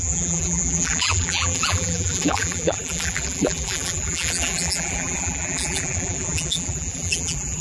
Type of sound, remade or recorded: remade